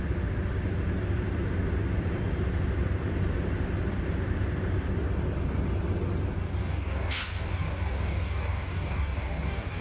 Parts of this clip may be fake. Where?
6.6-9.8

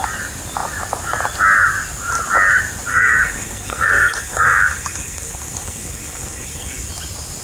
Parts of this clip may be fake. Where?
2.9-6.9

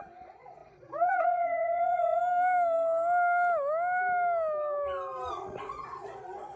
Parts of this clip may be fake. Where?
0.0-2.2; 5.3-6.6